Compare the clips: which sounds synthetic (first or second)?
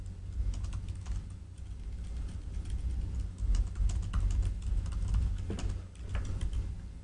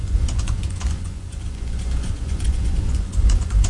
second